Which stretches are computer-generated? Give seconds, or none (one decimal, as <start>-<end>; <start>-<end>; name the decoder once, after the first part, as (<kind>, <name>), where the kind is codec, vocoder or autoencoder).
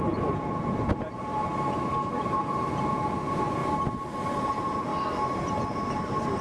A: 0.0-1.3 (vocoder, Vocos); 2.1-3.6; 4.5-4.9